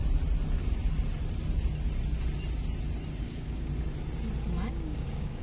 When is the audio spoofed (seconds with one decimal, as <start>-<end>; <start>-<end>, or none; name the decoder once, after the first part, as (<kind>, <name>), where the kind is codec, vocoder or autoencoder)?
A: 3.2-3.7 (codec, DAC); 4.7-5.4